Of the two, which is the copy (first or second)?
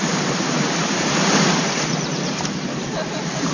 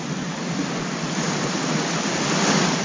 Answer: first